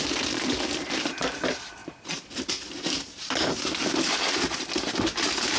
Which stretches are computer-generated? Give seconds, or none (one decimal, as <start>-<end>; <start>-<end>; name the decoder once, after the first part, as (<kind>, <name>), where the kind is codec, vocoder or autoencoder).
none